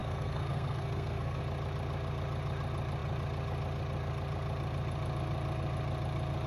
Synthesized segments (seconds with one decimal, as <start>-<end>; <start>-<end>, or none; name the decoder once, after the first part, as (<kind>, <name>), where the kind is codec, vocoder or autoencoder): 0.0-1.4 (codec, SNAC)